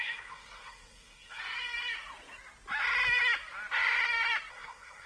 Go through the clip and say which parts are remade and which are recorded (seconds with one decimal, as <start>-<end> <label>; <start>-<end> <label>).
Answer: 0.0-1.4 remade; 1.4-4.5 recorded; 4.5-5.1 remade